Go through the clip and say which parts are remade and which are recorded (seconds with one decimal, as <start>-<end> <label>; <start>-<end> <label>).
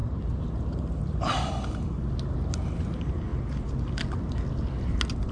0.0-1.5 remade; 1.5-5.3 recorded